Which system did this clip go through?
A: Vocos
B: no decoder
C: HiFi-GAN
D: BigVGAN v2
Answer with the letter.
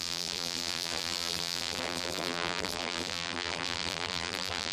D